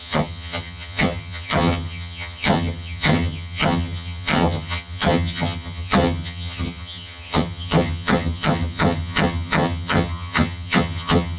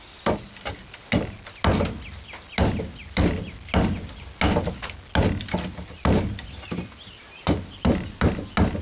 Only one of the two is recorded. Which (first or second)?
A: second